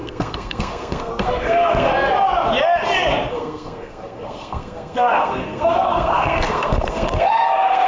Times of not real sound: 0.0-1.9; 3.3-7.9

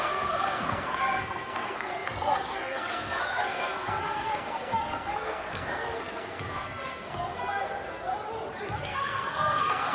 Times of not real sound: 0.0-8.1; 8.8-9.9